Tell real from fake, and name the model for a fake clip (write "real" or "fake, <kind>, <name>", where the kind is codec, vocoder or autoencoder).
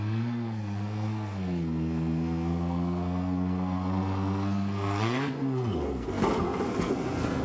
fake, codec, SNAC